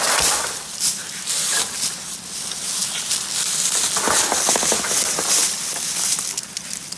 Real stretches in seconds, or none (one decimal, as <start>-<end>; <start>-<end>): 0.0-7.0